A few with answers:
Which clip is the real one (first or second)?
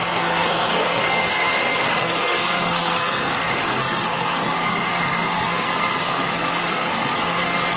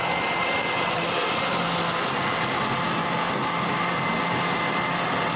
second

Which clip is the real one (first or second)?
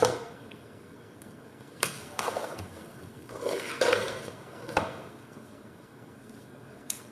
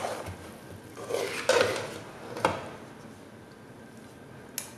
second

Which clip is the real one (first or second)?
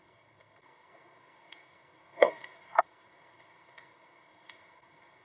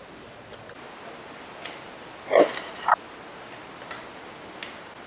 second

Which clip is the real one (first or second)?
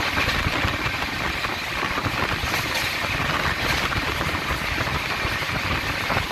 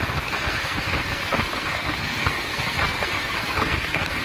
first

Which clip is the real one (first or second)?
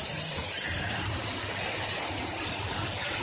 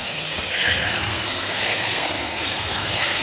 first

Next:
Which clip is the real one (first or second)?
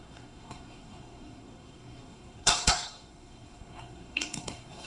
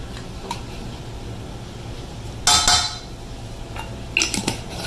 second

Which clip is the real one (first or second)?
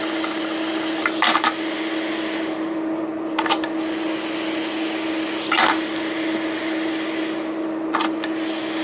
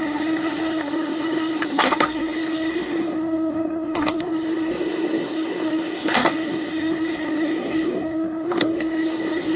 first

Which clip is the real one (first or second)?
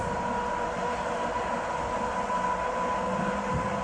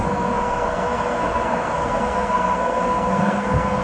first